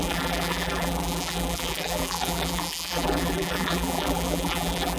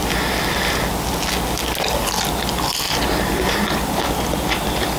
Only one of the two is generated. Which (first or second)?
first